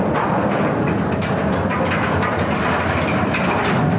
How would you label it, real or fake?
real